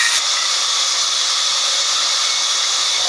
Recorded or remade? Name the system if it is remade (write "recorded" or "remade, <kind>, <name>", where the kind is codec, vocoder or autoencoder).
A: recorded